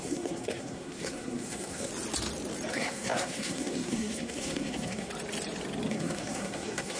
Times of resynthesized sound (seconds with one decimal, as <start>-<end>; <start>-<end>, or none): 0.0-1.9; 2.7-5.1; 5.9-7.0